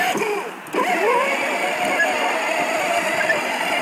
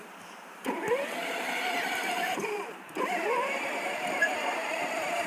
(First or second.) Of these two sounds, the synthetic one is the second